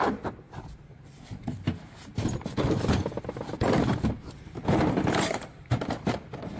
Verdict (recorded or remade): remade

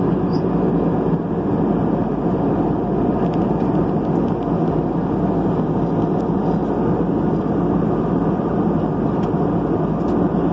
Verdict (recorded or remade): recorded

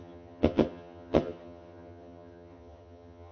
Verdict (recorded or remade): remade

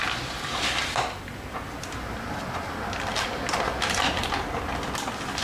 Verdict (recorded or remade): recorded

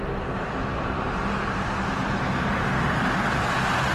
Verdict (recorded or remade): recorded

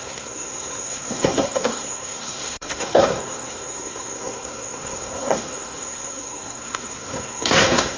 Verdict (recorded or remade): remade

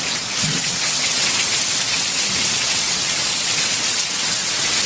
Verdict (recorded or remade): remade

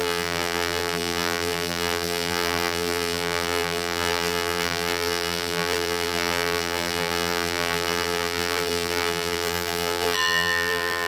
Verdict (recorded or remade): remade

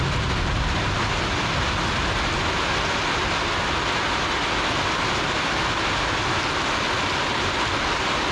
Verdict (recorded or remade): recorded